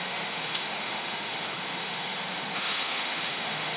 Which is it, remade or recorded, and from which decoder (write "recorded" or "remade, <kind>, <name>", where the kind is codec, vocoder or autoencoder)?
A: remade, autoencoder, DAC-VAE